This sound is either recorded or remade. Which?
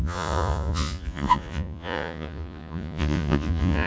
remade